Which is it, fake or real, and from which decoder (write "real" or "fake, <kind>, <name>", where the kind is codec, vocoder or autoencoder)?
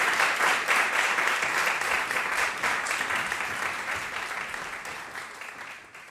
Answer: fake, vocoder, BigVGAN v2